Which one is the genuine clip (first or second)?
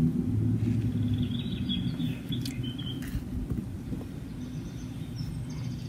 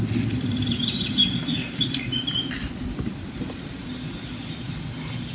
first